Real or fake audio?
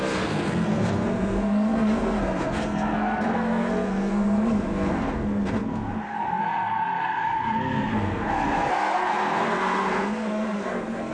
fake